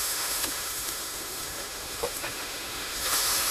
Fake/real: fake